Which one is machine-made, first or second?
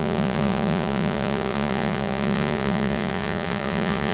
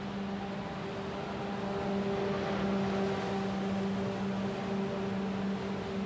first